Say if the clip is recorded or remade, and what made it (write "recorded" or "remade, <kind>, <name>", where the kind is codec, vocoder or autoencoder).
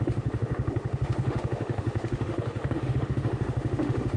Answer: remade, autoencoder, DAC-VAE